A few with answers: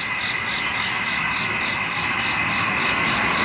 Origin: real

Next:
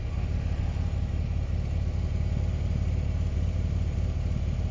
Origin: real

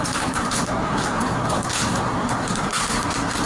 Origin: fake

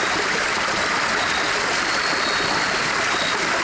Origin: real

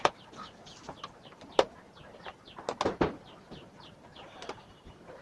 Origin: real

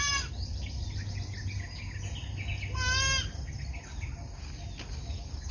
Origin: real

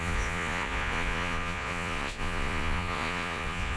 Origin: fake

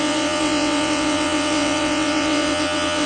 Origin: fake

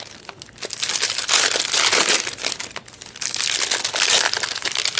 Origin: real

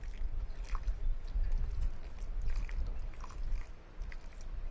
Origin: real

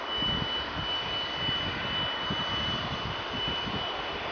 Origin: real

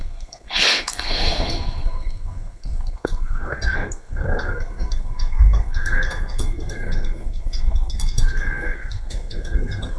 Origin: fake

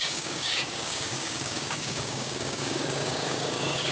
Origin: fake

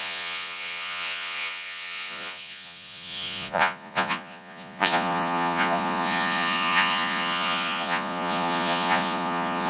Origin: fake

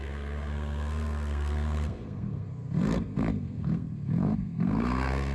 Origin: fake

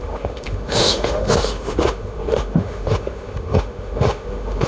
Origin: fake